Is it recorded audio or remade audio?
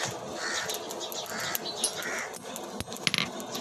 recorded